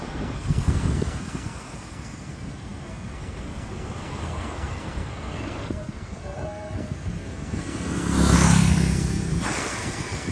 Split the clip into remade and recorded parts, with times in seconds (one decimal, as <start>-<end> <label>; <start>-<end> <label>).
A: 0.0-10.3 remade